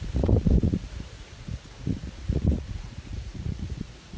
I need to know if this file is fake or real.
fake